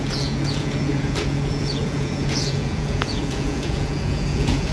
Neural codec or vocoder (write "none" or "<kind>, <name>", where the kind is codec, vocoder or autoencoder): vocoder, Vocos